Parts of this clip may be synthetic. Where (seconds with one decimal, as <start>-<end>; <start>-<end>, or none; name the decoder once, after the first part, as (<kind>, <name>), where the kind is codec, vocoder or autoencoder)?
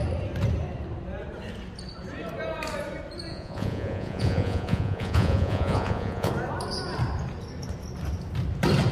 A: 3.3-6.3 (vocoder, Vocos)